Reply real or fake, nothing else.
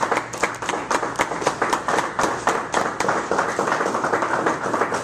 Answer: real